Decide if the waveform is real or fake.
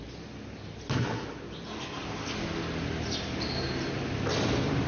real